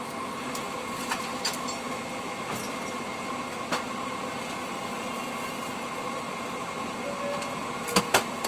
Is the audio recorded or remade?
recorded